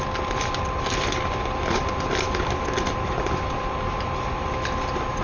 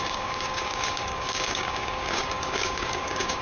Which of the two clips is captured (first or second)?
first